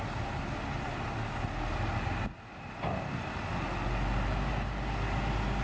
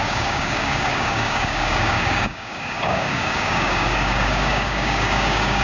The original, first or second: first